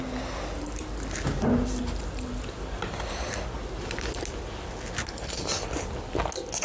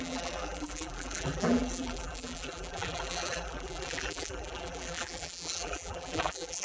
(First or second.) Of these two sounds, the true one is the first